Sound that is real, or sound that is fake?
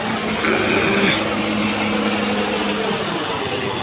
real